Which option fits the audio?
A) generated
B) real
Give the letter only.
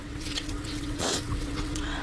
A